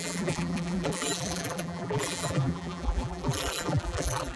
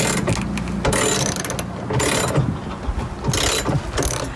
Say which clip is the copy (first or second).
first